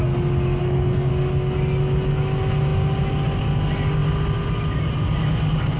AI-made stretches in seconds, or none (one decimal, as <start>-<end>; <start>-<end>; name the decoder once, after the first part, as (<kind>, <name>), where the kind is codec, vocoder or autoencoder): 0.6-1.1 (codec, SNAC)